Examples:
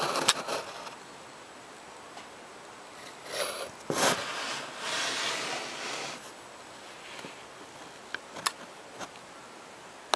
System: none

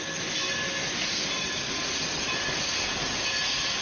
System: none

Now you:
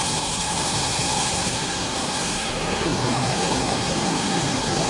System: codec, SNAC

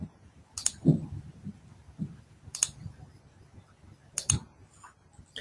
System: none